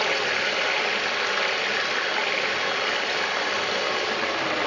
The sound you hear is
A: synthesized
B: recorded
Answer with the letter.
B